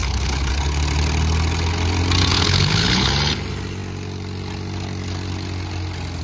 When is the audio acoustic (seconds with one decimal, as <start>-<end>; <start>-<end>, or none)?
0.5-2.3; 3.1-6.2